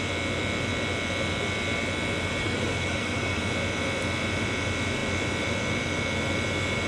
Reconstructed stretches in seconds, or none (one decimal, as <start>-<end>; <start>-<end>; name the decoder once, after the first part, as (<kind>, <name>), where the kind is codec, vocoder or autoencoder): 2.4-3.4 (codec, SNAC)